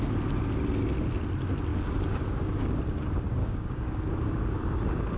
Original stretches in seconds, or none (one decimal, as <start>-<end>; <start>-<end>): 0.0-1.7; 2.8-3.4